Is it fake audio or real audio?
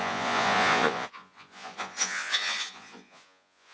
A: fake